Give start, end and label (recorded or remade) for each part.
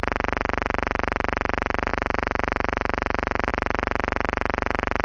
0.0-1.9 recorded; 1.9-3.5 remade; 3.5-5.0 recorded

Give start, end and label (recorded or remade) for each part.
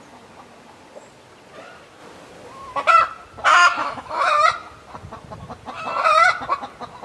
0.0-3.8 recorded; 3.8-4.3 remade; 4.3-7.0 recorded